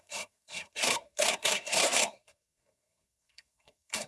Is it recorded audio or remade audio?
remade